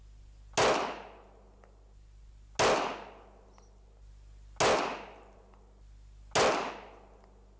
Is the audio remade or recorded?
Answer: recorded